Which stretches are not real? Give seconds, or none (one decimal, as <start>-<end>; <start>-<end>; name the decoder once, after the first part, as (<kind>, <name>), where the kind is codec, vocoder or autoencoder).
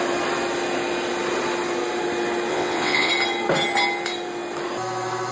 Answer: 2.5-3.1 (vocoder, WaveNeXt)